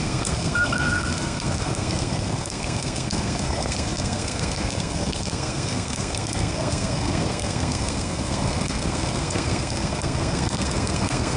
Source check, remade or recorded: remade